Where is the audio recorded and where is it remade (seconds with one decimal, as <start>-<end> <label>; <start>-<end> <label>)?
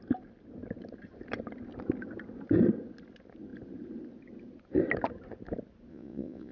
0.0-5.9 recorded; 5.9-6.5 remade